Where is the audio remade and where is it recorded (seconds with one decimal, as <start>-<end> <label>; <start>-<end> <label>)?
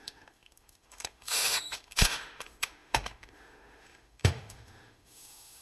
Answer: 0.0-5.6 remade